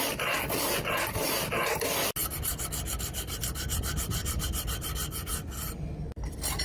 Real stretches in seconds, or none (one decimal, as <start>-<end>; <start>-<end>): 0.0-6.6